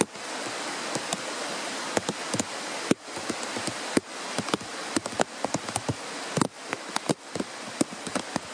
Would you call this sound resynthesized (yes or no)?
no